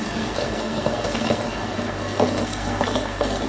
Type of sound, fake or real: fake